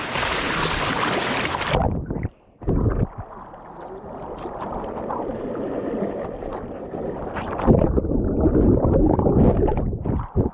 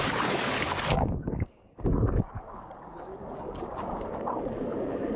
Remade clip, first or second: second